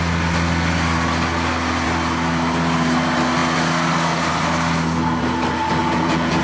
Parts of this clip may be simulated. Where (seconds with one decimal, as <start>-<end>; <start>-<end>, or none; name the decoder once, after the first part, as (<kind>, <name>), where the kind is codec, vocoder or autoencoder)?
5.8-6.4 (vocoder, Vocos)